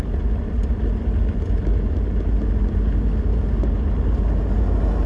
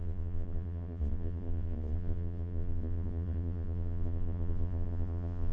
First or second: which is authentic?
first